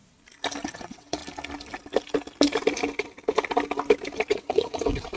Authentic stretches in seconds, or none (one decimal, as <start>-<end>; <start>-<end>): 0.0-0.7; 1.2-4.3